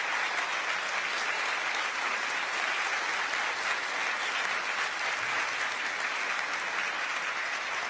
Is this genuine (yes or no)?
yes